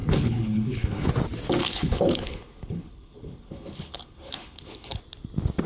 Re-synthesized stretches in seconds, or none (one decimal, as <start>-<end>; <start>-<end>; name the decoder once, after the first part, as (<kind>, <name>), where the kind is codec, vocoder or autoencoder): 0.0-1.1 (codec, HILCodec); 1.6-5.0